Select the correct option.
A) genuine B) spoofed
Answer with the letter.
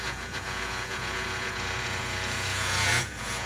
B